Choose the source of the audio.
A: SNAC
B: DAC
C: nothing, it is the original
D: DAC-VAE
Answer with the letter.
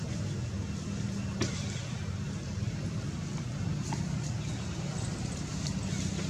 C